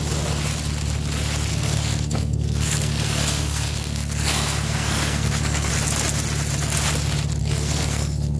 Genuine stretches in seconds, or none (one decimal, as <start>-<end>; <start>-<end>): 0.0-1.5; 5.7-7.4